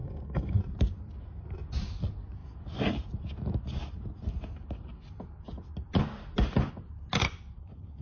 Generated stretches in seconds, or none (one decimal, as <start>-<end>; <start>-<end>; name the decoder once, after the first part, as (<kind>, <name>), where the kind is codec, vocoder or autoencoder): 0.0-0.6 (codec, SNAC)